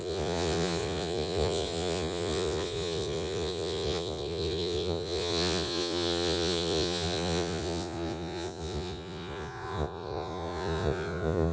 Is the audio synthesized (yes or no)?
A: yes